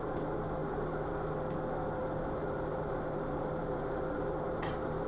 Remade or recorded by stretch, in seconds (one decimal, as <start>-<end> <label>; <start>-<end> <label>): 0.0-0.6 recorded; 0.6-1.1 remade; 1.1-2.0 recorded; 2.0-5.1 remade